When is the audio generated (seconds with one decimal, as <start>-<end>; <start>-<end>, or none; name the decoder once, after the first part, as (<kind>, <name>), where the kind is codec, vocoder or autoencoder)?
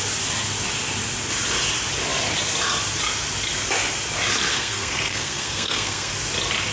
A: 4.5-6.1 (codec, SNAC)